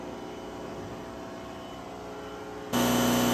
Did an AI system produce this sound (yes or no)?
no